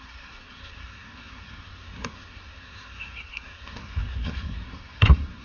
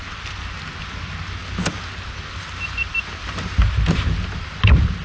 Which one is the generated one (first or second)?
first